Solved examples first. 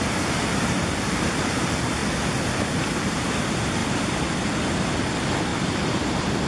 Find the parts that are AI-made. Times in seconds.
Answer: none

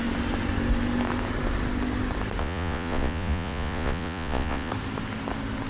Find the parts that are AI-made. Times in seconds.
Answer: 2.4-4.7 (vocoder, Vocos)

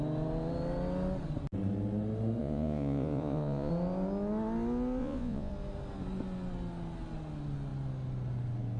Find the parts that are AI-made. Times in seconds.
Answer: 2.4-3.7 (vocoder, Vocos); 5.0-5.5

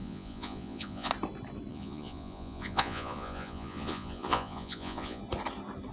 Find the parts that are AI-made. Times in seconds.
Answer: 0.0-1.1 (vocoder, Vocos); 1.7-5.2

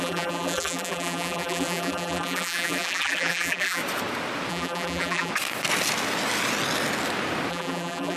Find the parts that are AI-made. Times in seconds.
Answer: 0.0-3.8 (vocoder, BigVGAN v2); 4.5-5.3; 7.5-8.2

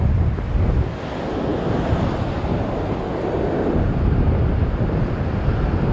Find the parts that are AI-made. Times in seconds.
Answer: none

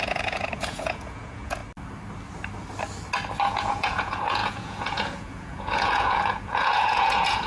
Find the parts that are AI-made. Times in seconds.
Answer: 0.0-1.6 (vocoder, Vocos); 3.5-7.5